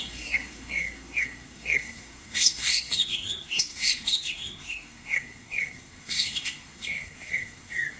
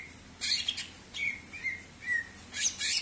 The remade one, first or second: first